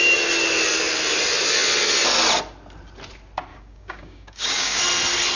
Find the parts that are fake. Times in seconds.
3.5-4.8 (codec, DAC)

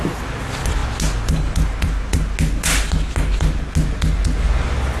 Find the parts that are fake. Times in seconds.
none

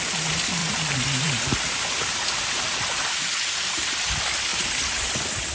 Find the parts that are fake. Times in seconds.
0.6-3.2 (vocoder, BigVGAN v2); 4.5-5.1